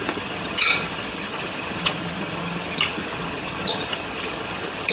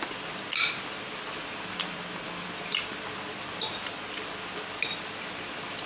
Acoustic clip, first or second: second